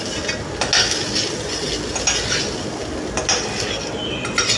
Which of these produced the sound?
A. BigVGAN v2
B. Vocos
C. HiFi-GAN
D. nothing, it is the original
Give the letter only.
D